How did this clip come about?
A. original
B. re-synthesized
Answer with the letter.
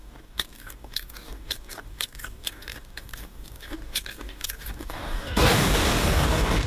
B